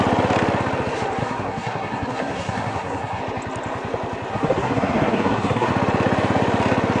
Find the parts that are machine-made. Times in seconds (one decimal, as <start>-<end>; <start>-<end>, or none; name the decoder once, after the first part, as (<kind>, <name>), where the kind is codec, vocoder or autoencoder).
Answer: 1.2-3.2 (codec, SNAC); 4.3-5.7